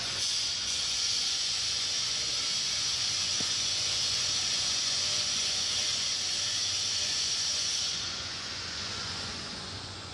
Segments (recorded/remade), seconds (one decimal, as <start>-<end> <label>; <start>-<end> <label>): 0.0-10.1 remade